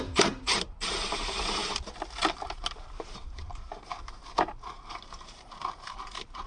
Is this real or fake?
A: fake